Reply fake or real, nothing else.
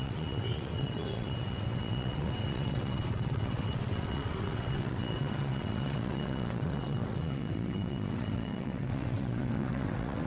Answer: fake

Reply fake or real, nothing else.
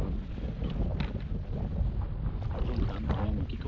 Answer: real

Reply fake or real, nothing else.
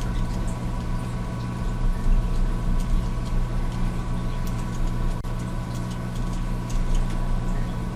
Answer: real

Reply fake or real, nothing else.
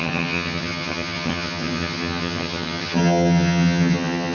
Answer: fake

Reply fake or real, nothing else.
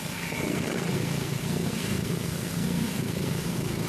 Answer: fake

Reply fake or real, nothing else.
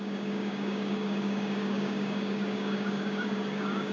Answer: fake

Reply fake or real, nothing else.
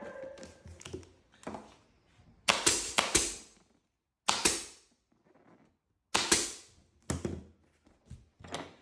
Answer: real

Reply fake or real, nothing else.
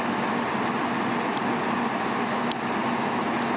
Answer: real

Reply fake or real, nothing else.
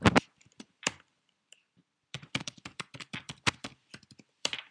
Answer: fake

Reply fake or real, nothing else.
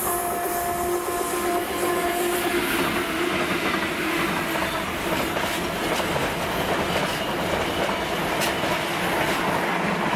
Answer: real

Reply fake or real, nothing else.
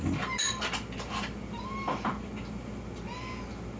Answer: real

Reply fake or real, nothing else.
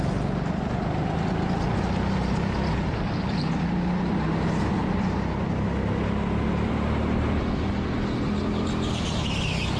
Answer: real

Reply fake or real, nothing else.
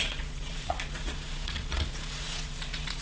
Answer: fake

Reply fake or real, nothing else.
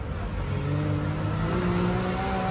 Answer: real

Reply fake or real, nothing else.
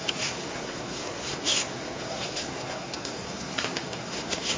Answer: fake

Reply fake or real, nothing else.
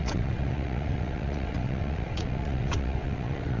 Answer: fake